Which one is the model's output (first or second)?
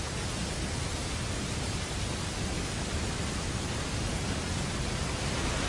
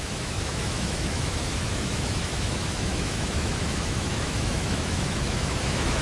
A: second